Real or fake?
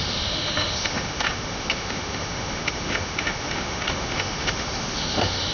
fake